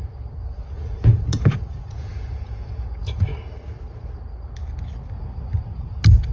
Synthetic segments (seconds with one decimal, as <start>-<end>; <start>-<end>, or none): 0.0-3.3